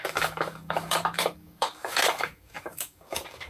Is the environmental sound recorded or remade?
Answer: remade